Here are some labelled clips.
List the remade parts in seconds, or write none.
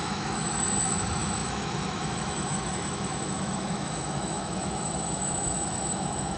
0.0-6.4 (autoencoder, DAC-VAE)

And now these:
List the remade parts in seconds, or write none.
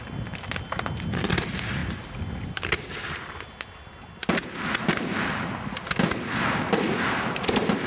none